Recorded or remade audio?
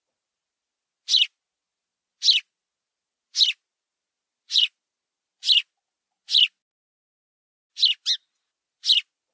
recorded